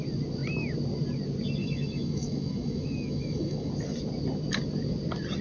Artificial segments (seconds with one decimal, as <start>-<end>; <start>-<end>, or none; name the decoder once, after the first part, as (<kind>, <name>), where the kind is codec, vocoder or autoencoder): 1.6-3.7 (autoencoder, DAC-VAE)